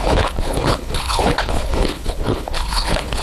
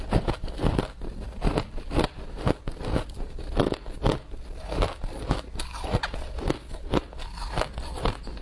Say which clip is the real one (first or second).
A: second